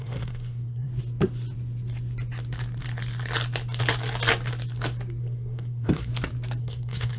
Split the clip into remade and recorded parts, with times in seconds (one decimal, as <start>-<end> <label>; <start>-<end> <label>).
0.0-0.9 remade; 0.9-5.2 recorded; 5.2-6.1 remade; 6.1-6.6 recorded; 6.6-7.2 remade